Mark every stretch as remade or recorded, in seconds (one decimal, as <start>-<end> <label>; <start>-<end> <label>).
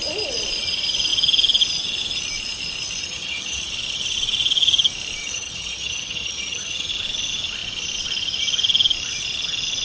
0.0-3.0 recorded; 3.0-3.6 remade; 3.6-5.2 recorded; 5.2-6.9 remade; 6.9-9.8 recorded